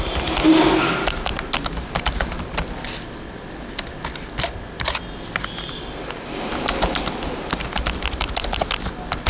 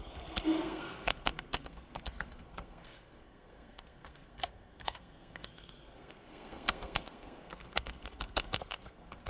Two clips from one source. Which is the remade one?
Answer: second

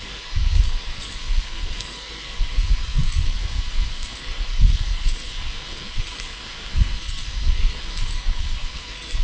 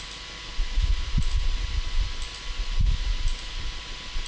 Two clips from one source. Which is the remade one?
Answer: first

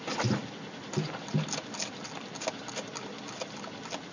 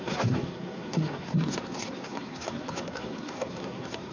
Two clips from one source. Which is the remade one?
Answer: second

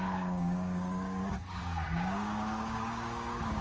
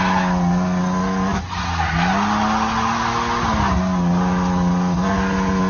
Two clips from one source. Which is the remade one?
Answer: first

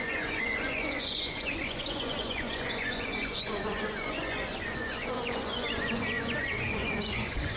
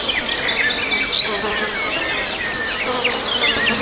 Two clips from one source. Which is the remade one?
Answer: first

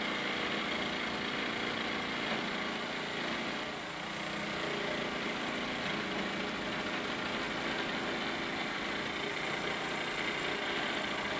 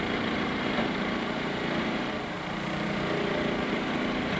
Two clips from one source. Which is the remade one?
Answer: second